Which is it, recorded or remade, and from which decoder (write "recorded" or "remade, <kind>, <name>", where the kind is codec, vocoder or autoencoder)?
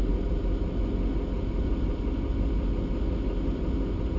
recorded